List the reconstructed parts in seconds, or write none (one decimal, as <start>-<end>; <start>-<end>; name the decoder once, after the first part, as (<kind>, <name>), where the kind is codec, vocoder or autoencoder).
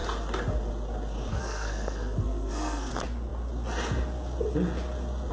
1.3-2.9 (codec, SNAC)